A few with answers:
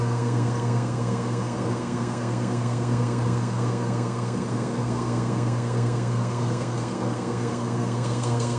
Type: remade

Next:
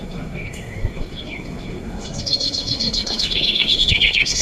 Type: remade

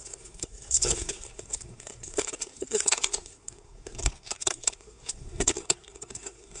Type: remade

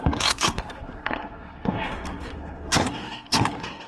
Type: remade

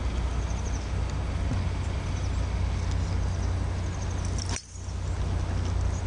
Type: recorded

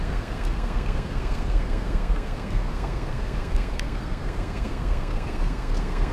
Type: remade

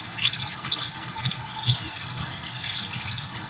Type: remade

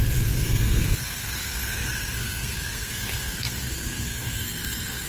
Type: remade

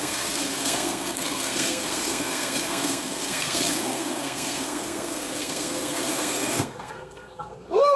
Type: remade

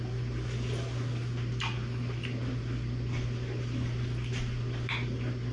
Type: recorded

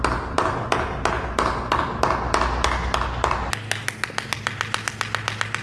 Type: recorded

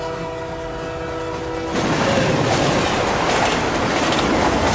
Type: recorded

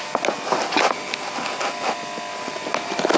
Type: recorded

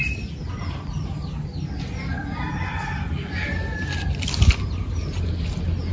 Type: recorded